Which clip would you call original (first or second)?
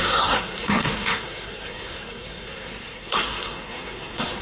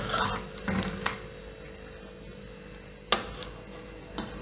second